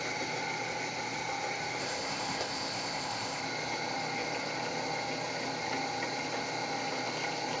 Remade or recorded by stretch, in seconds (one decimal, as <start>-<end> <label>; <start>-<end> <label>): 0.0-1.8 recorded; 1.8-3.4 remade; 3.4-7.6 recorded